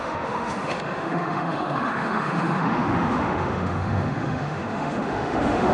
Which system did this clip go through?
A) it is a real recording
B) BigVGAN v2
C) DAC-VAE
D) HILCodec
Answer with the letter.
C